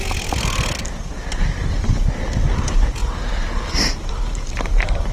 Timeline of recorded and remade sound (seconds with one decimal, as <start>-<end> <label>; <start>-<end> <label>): 0.0-5.1 recorded